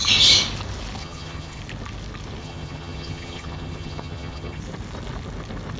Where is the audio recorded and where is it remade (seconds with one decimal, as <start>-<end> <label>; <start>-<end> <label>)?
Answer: 0.0-1.0 recorded; 1.0-1.6 remade; 1.6-2.4 recorded; 2.4-4.6 remade; 4.6-5.8 recorded